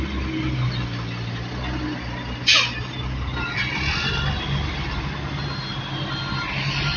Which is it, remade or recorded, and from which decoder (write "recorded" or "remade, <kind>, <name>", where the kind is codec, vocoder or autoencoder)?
recorded